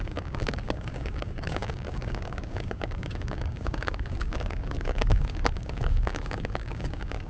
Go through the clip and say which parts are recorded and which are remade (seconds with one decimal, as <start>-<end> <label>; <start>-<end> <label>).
0.0-7.3 remade

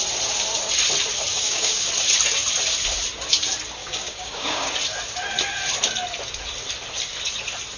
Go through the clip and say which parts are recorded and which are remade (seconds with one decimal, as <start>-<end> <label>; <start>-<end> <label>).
0.0-1.3 recorded; 1.3-1.9 remade; 1.9-3.8 recorded; 3.8-4.7 remade; 4.7-7.8 recorded

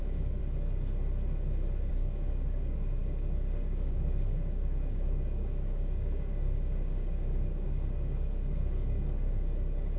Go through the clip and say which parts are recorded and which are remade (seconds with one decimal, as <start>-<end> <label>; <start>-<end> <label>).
0.0-0.4 remade; 0.4-1.9 recorded; 1.9-10.0 remade

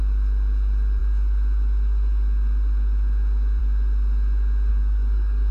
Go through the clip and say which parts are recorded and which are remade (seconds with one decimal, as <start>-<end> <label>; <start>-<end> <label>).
0.0-4.7 recorded; 4.7-5.5 remade

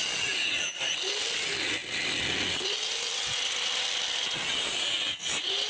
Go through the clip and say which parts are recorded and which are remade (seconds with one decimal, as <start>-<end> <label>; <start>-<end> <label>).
0.0-5.7 recorded